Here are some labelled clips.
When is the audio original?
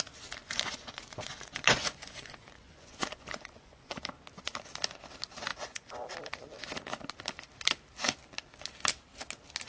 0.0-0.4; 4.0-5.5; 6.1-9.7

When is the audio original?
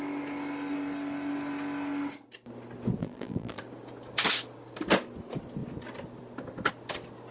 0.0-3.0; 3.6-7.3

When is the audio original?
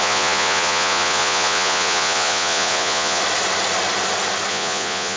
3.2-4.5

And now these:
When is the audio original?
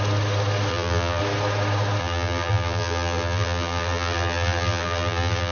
0.0-0.7; 1.2-2.0